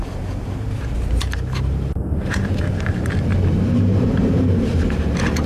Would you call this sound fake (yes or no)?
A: yes